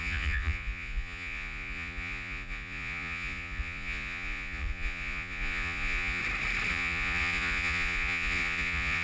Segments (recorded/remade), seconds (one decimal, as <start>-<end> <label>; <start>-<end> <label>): 0.0-6.2 remade; 6.2-6.7 recorded; 6.7-9.0 remade